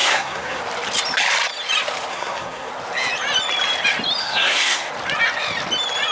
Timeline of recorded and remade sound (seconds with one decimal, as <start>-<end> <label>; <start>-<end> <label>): 0.0-0.6 remade; 0.6-2.1 recorded; 2.1-2.7 remade; 2.7-4.2 recorded; 4.2-4.9 remade; 4.9-6.1 recorded